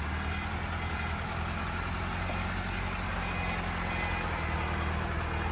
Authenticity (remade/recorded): recorded